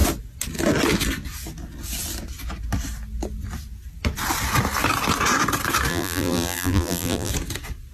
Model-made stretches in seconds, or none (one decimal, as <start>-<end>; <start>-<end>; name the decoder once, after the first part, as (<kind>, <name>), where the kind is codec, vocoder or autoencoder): 5.9-7.3 (vocoder, BigVGAN v2)